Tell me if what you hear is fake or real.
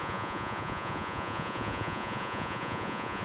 fake